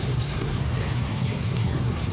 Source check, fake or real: fake